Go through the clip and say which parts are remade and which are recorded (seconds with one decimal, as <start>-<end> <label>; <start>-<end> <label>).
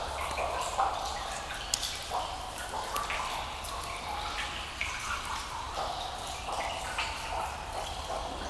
0.0-8.5 recorded